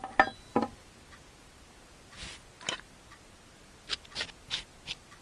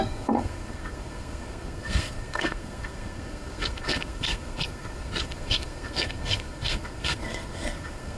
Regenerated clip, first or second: second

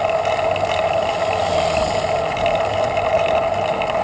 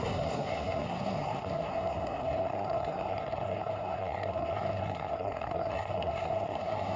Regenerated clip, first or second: second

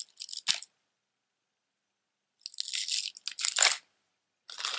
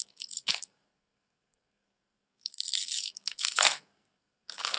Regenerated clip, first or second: second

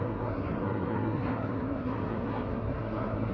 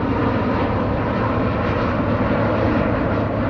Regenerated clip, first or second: first